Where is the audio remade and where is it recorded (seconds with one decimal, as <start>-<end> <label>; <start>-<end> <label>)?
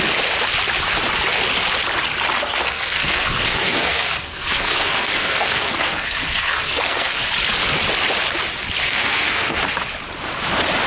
0.0-2.4 recorded; 2.4-7.2 remade; 7.2-8.8 recorded; 8.8-9.6 remade; 9.6-10.9 recorded